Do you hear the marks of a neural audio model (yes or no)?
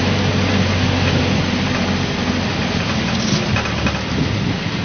no